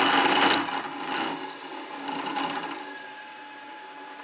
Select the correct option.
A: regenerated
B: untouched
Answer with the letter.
B